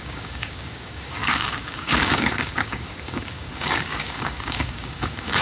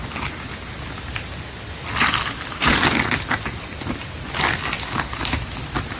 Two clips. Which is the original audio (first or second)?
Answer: second